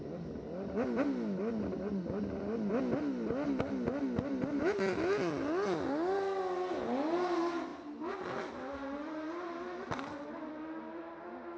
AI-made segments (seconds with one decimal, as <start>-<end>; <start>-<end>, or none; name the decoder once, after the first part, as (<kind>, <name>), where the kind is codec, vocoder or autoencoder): none